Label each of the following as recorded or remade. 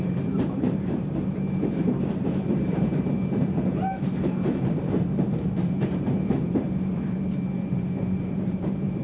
remade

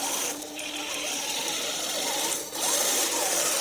recorded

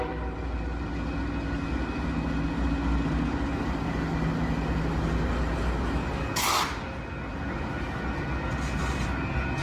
recorded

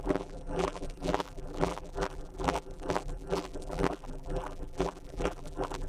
remade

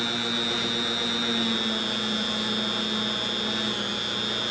recorded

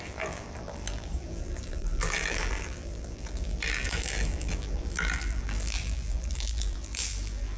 remade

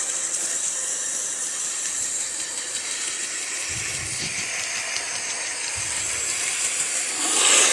remade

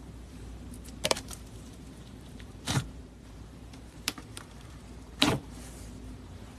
remade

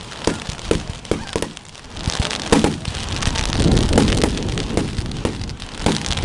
recorded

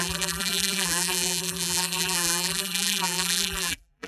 remade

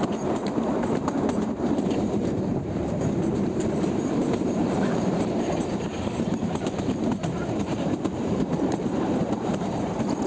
remade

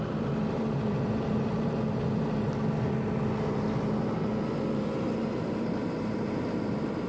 remade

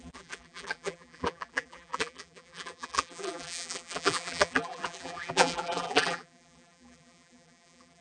remade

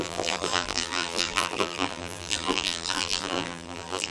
remade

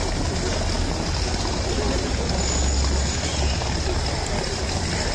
recorded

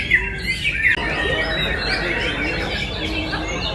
recorded